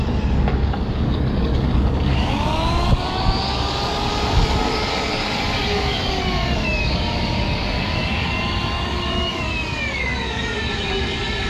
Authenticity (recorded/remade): remade